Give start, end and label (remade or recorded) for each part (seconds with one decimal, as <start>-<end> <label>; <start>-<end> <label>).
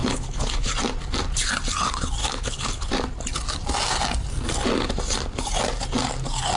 0.0-0.7 remade; 0.7-2.2 recorded; 2.2-2.9 remade; 2.9-6.6 recorded